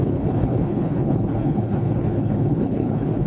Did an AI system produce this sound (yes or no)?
yes